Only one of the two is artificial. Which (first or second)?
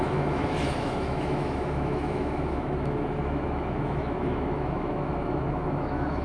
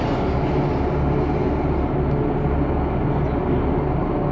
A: first